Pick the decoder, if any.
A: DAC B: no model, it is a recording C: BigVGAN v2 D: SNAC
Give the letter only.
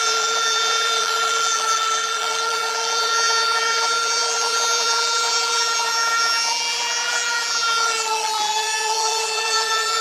C